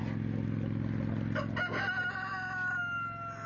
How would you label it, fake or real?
real